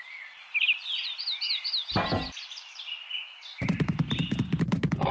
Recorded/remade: recorded